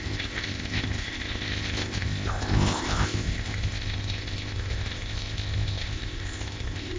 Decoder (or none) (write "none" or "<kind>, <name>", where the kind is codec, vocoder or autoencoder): codec, ZipCodec